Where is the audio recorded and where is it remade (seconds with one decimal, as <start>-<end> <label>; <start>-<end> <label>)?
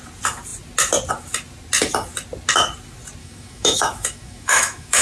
0.0-3.2 recorded; 3.2-5.0 remade